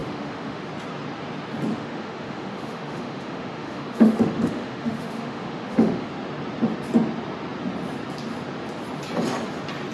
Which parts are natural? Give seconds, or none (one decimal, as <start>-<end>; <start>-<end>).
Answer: 0.7-1.7; 6.1-9.9